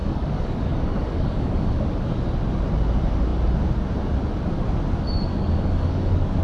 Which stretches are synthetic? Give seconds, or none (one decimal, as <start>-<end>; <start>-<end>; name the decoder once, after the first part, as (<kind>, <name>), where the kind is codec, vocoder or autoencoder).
0.0-1.8 (codec, DAC); 5.3-6.4